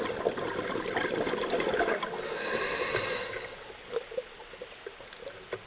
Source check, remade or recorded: recorded